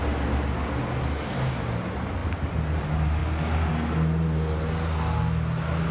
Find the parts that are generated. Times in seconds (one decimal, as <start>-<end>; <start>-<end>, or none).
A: none